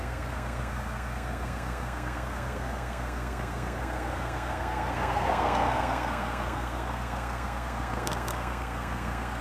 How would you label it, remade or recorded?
remade